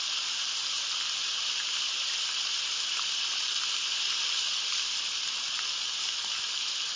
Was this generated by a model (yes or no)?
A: no